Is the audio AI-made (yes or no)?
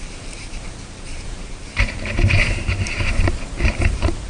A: yes